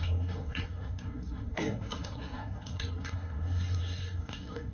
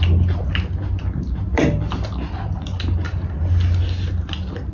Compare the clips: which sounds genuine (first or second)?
second